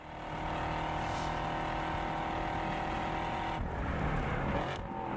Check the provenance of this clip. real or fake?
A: real